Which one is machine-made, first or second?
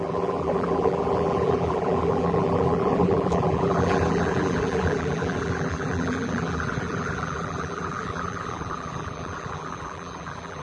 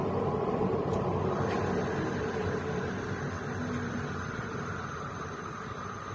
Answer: first